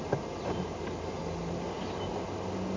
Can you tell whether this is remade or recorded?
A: recorded